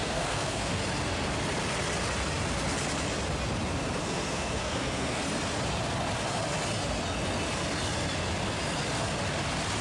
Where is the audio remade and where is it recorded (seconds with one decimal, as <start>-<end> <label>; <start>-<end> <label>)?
0.0-0.8 remade; 0.8-4.0 recorded; 4.0-5.2 remade; 5.2-9.8 recorded